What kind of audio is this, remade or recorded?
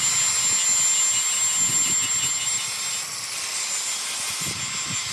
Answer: recorded